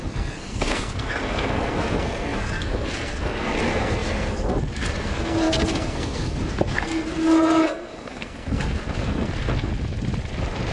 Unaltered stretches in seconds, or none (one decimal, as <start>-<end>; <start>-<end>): 9.7-10.7